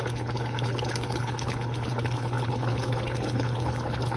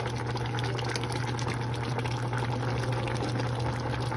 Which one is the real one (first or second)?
second